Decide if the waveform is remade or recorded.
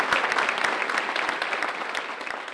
recorded